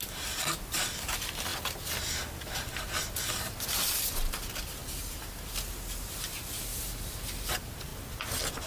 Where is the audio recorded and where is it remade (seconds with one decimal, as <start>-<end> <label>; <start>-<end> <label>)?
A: 0.0-8.7 recorded